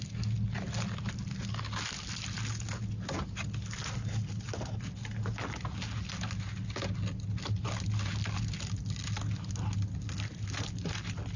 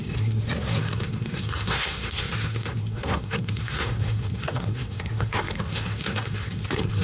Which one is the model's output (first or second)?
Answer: second